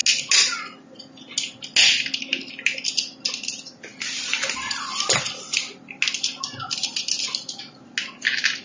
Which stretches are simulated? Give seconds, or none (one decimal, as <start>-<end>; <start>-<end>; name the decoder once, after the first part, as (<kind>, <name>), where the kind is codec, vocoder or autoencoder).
none